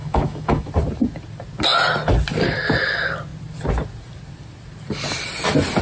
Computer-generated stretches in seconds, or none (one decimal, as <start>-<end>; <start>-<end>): 0.0-0.7